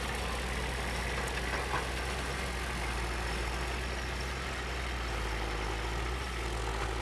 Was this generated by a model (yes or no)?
no